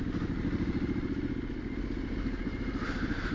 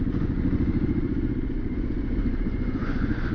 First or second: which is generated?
second